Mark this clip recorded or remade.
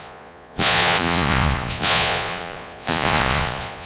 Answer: remade